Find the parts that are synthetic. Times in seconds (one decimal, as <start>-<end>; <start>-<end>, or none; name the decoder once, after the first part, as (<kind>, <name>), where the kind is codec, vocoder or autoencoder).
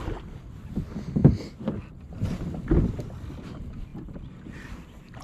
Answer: none